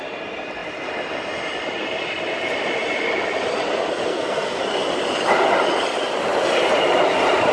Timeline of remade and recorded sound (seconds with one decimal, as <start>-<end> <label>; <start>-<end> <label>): 0.0-4.1 recorded; 4.1-4.6 remade; 4.6-7.5 recorded